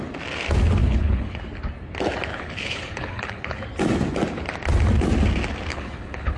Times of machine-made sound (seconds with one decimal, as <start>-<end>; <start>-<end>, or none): 0.8-1.4; 2.3-3.6; 5.7-6.4